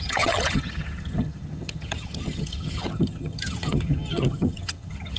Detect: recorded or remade remade